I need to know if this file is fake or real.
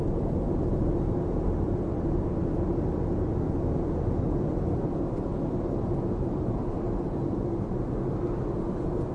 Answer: real